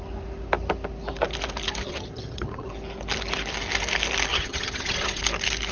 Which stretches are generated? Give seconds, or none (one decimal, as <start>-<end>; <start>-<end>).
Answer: 1.8-2.7; 4.3-5.2